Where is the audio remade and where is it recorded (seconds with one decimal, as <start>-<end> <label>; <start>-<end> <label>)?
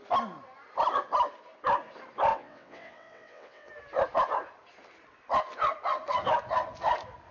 0.0-2.3 recorded; 2.3-3.7 remade; 3.7-7.3 recorded